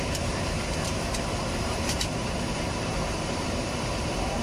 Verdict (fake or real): fake